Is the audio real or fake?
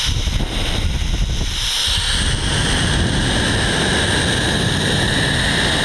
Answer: real